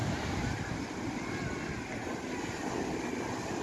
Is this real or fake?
real